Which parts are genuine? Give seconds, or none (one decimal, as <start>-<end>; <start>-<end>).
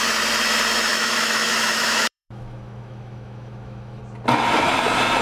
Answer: 0.0-0.9; 4.0-5.2